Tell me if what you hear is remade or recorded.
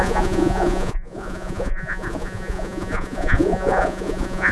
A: remade